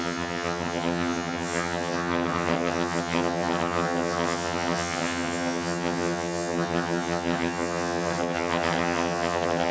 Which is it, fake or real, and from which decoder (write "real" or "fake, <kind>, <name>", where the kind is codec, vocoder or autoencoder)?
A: fake, vocoder, HiFi-GAN